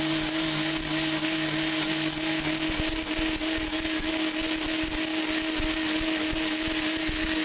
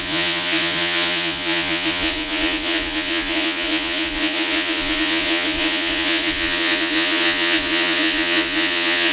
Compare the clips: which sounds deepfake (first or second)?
second